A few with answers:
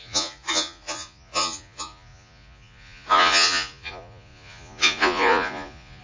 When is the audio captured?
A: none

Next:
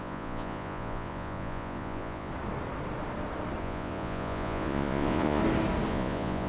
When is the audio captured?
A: 2.3-3.6; 5.4-5.9

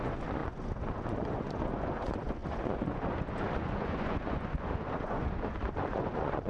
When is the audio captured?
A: none

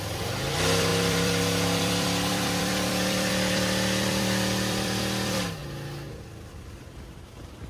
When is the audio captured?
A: 5.6-6.2

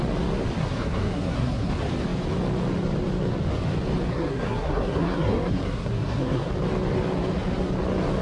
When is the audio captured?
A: 0.0-0.6; 1.7-4.1; 6.5-8.2